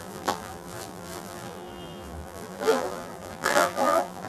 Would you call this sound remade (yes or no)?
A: yes